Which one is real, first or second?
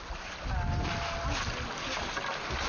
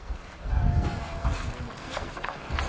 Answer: first